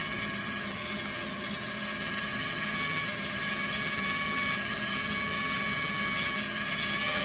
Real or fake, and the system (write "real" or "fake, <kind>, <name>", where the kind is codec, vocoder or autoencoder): fake, vocoder, HiFi-GAN